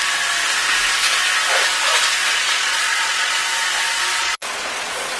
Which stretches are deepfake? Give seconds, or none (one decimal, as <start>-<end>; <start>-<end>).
2.3-3.3; 4.2-5.2